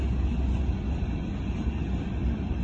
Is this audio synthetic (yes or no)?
no